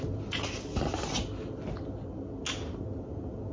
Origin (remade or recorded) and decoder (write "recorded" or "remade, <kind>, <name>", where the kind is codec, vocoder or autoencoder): recorded